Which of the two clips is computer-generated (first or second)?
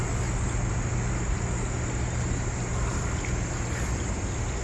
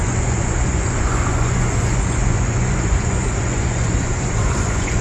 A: second